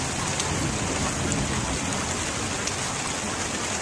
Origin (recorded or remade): recorded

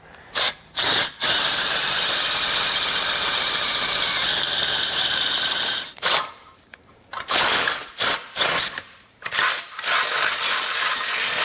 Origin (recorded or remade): remade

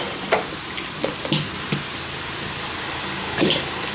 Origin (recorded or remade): remade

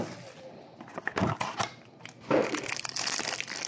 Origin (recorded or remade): remade